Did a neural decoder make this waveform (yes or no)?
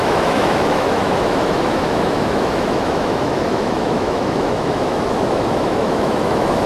yes